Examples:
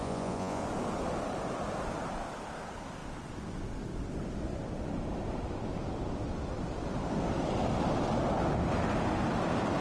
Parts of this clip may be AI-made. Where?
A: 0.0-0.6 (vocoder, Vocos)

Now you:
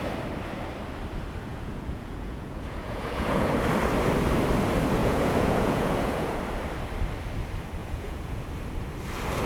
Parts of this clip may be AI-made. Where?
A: 1.5-3.5 (vocoder, Vocos); 5.0-6.4; 7.8-8.4

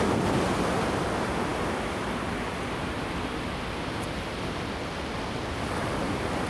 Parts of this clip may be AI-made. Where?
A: none

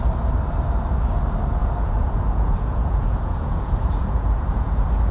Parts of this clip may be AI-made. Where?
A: 1.6-5.1 (vocoder, Vocos)

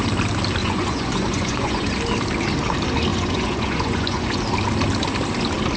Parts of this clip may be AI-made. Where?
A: 0.6-1.9 (vocoder, Vocos); 3.1-4.4

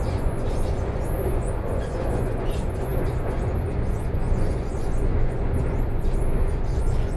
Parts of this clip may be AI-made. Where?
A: 0.0-7.2 (vocoder, Vocos)

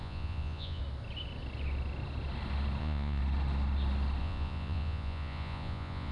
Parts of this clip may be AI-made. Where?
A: 0.0-0.8 (vocoder, Vocos); 2.8-3.2; 4.2-6.1